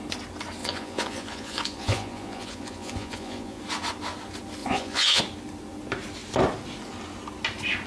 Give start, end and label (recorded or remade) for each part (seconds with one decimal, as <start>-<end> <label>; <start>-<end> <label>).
0.0-0.6 recorded; 0.6-3.6 remade; 3.6-4.6 recorded; 4.6-5.2 remade; 5.2-7.9 recorded